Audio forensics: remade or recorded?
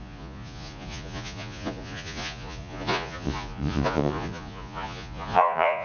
remade